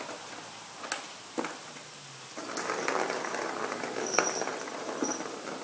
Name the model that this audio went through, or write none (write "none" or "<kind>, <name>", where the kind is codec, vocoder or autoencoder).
none